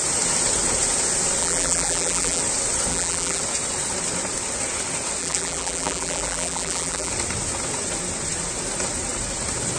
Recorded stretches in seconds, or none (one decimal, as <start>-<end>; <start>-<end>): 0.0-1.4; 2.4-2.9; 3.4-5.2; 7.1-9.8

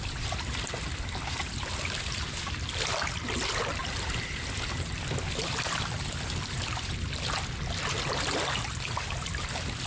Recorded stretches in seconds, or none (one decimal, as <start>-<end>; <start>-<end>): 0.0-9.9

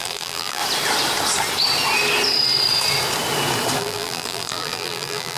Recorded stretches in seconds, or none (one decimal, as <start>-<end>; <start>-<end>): 0.6-3.8

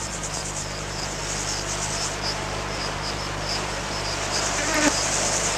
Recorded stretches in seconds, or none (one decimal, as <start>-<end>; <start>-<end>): 1.2-1.9